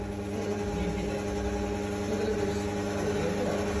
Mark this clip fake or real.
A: real